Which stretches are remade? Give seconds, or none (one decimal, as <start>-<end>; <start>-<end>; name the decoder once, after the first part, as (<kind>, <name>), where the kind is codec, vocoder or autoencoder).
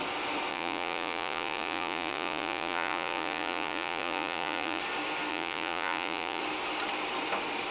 0.5-4.8 (vocoder, Vocos); 5.3-6.4